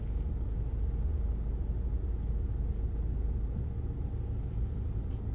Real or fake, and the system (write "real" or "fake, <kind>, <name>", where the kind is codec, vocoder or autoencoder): real